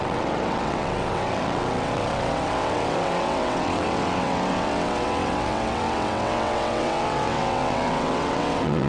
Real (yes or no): no